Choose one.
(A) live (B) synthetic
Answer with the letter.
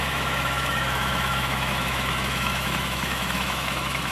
B